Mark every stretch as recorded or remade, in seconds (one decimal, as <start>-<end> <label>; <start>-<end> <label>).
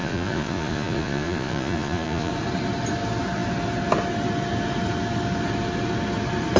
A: 0.0-2.3 remade; 2.3-6.6 recorded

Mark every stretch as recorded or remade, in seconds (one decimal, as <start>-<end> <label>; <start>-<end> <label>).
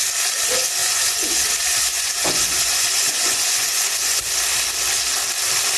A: 0.0-0.8 recorded; 0.8-1.4 remade; 1.4-1.9 recorded; 1.9-4.3 remade; 4.3-5.8 recorded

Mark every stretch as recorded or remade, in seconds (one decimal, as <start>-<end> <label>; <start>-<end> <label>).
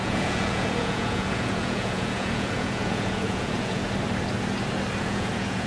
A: 0.0-3.8 remade; 3.8-5.0 recorded; 5.0-5.7 remade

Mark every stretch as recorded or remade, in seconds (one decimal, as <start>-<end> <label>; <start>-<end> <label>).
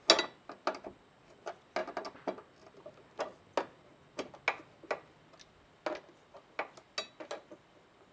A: 0.0-8.1 recorded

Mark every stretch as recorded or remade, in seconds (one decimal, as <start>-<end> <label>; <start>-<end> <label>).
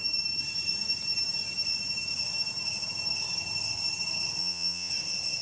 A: 0.0-4.4 recorded; 4.4-4.9 remade; 4.9-5.4 recorded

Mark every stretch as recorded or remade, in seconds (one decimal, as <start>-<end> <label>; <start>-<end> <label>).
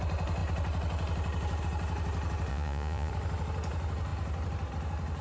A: 0.0-2.5 recorded; 2.5-3.1 remade; 3.1-5.2 recorded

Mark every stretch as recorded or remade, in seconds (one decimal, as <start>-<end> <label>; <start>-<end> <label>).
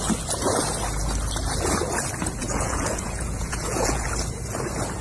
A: 0.0-2.4 recorded; 2.4-4.1 remade; 4.1-5.0 recorded